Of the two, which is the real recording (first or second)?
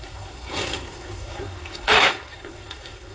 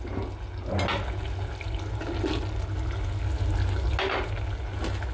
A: second